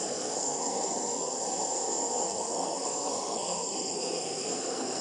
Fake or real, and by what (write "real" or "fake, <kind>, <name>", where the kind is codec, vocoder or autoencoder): fake, codec, SNAC